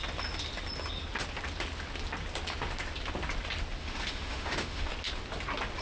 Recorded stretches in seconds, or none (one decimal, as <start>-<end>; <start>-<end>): 0.0-3.8; 4.9-5.8

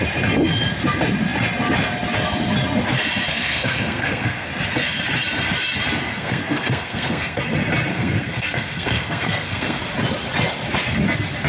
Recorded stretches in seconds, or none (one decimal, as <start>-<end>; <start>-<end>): 0.0-3.3; 4.5-6.1; 7.4-7.9; 9.8-11.5

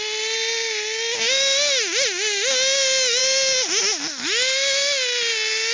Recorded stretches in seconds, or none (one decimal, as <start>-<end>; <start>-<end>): 0.0-5.7